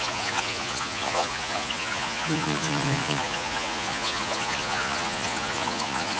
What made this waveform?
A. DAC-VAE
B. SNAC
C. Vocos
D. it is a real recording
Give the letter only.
C